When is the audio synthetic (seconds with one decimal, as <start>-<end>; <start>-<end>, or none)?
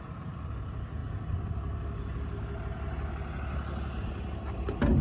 none